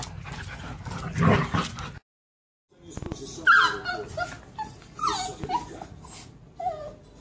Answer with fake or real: real